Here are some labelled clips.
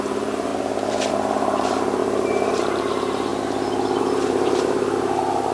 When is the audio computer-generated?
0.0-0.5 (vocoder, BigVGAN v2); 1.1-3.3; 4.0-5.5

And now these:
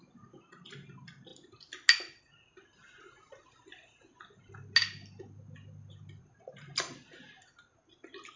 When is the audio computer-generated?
none

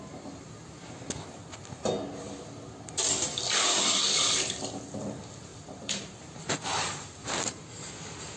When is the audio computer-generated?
5.5-7.9 (vocoder, BigVGAN v2)